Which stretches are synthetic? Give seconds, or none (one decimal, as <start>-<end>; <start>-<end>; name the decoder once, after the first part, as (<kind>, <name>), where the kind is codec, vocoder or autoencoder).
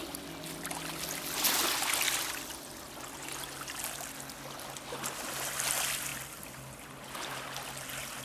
none